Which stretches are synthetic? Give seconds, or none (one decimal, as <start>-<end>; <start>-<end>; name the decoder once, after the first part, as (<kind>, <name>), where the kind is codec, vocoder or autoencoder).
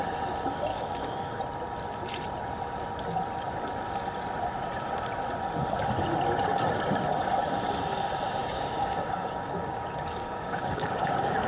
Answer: 0.7-1.4 (codec, DAC); 8.4-11.5